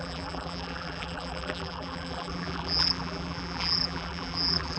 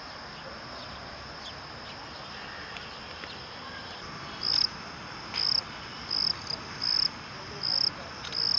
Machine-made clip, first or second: first